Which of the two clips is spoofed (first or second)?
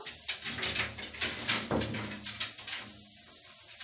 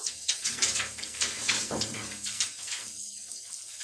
second